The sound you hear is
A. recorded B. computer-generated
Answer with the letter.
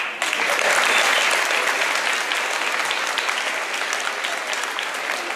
A